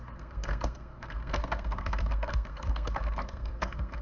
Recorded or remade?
remade